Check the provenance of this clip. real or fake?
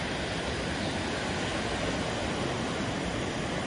real